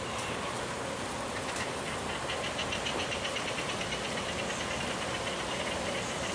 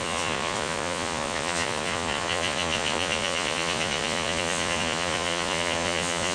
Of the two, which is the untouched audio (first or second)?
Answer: first